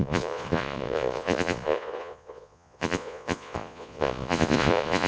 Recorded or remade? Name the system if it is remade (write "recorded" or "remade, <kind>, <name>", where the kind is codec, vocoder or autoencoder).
remade, vocoder, Vocos